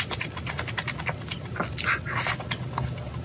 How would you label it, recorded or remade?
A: recorded